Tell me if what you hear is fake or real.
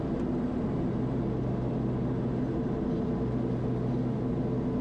real